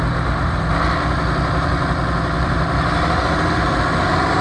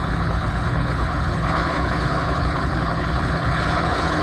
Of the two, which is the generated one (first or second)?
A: second